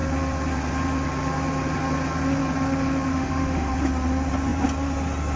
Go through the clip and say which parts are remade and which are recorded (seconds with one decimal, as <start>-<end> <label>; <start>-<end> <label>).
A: 0.0-3.1 recorded; 3.1-3.7 remade; 3.7-5.4 recorded